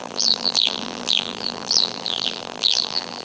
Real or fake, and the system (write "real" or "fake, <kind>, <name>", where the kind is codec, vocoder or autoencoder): fake, vocoder, BigVGAN v2